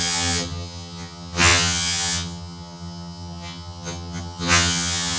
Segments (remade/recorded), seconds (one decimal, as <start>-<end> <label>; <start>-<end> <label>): 0.0-5.2 remade